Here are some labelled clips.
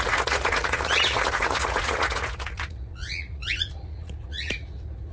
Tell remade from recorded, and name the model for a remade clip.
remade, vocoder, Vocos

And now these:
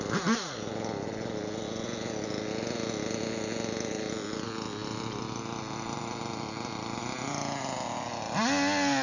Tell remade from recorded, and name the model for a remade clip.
recorded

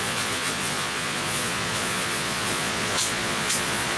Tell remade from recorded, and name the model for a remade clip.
remade, vocoder, Vocos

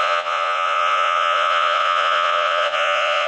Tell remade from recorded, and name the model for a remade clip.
remade, vocoder, Vocos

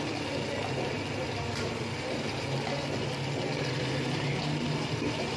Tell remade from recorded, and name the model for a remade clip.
recorded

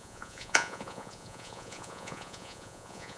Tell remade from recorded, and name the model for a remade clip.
remade, vocoder, Vocos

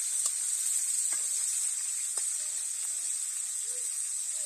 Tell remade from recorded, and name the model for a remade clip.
recorded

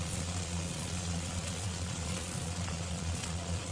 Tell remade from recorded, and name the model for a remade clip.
remade, vocoder, Vocos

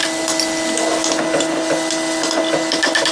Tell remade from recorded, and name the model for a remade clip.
recorded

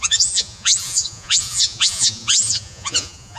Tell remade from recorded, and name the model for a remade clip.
remade, vocoder, Vocos